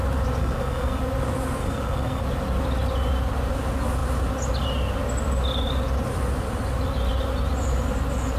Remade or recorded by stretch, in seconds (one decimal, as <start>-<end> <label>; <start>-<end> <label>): 0.0-0.4 recorded; 0.4-1.0 remade; 1.0-1.6 recorded; 1.6-2.2 remade; 2.2-8.4 recorded